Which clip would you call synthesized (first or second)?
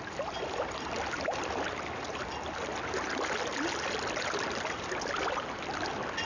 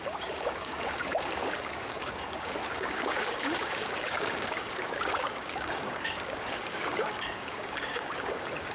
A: second